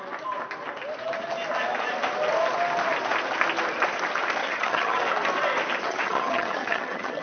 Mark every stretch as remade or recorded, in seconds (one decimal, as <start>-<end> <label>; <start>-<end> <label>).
0.0-4.4 recorded; 4.4-5.0 remade; 5.0-5.9 recorded; 5.9-7.2 remade